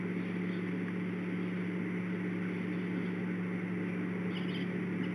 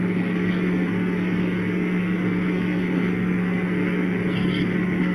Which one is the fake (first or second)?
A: second